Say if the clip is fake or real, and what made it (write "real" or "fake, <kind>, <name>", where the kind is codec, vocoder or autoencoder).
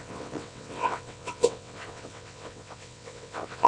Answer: fake, vocoder, WaveNeXt